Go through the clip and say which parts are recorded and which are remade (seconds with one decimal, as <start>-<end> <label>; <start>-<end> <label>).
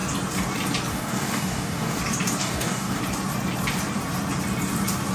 0.0-0.9 recorded; 0.9-2.0 remade; 2.0-2.4 recorded; 2.4-3.0 remade; 3.0-5.1 recorded